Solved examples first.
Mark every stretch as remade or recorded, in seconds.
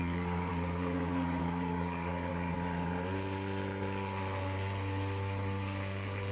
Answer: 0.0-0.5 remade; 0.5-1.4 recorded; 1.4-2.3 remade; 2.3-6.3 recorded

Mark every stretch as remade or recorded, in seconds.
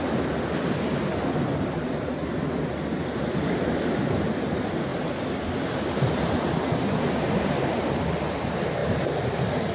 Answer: 0.0-9.7 recorded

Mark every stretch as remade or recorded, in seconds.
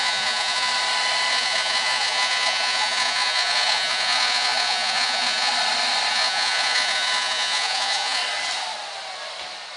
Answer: 0.0-0.7 remade; 0.7-1.3 recorded; 1.3-5.5 remade; 5.5-6.1 recorded; 6.1-8.2 remade; 8.2-9.8 recorded